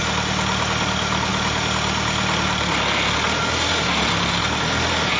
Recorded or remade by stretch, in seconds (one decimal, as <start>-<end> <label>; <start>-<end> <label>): 0.0-5.2 recorded